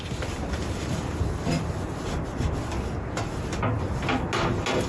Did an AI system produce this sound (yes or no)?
no